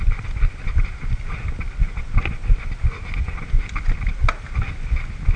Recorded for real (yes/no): yes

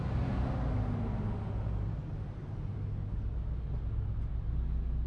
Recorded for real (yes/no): yes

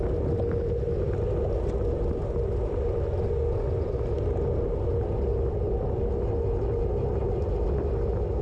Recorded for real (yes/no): yes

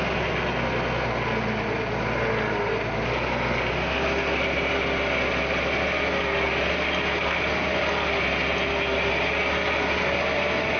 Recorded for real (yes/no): yes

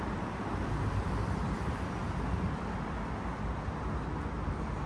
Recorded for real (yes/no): yes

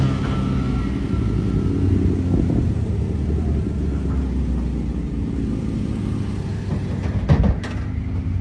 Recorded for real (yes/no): yes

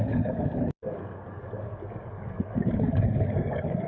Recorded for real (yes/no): no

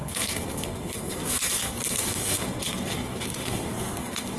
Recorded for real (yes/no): no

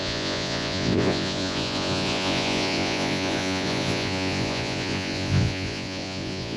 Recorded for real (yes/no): no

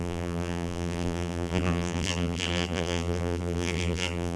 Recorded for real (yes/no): no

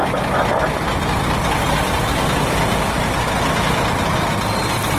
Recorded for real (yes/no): yes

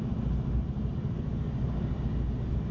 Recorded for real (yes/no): yes